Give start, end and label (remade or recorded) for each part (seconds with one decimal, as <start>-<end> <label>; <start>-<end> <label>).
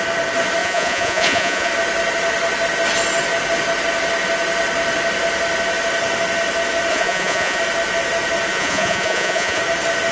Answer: 0.0-0.6 recorded; 0.6-1.7 remade; 1.7-6.9 recorded; 6.9-7.6 remade; 7.6-8.5 recorded; 8.5-9.6 remade; 9.6-10.1 recorded